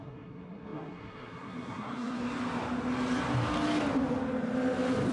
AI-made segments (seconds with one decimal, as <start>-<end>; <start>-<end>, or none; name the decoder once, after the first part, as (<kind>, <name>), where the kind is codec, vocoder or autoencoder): 0.0-2.2 (codec, SNAC)